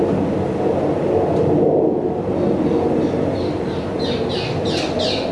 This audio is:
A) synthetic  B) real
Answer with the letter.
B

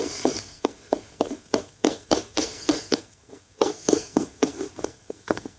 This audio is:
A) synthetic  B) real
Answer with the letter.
A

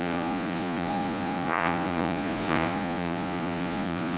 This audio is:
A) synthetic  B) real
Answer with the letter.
A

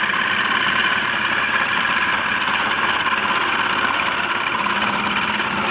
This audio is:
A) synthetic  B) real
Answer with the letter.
B